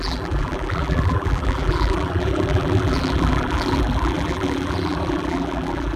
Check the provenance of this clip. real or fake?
fake